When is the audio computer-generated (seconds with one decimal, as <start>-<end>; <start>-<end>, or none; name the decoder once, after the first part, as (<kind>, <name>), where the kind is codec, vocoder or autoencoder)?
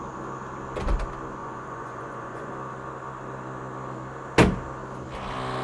1.4-2.5 (vocoder, Vocos)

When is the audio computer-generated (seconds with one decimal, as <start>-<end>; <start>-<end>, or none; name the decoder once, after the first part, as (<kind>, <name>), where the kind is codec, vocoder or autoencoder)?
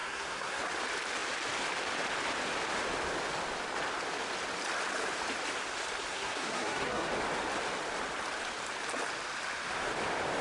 0.0-0.6 (codec, SNAC); 6.1-7.1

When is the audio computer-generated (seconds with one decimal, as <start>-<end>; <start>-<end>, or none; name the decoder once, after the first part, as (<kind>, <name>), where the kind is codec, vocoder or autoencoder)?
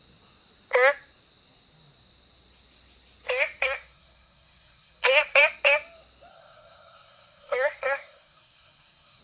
3.6-5.4 (codec, SNAC); 6.3-9.2